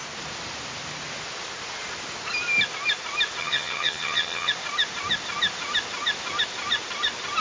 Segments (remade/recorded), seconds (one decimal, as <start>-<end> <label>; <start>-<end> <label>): 0.0-3.4 recorded; 3.4-4.5 remade; 4.5-7.4 recorded